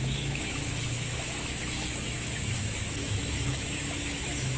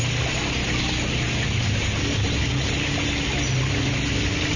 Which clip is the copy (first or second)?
first